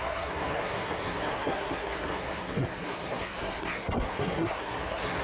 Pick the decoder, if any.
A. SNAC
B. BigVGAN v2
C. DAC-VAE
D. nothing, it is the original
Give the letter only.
A